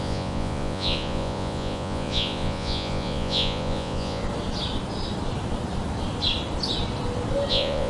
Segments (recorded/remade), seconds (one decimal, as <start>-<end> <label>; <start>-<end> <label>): 0.0-4.2 remade; 4.2-7.5 recorded; 7.5-7.9 remade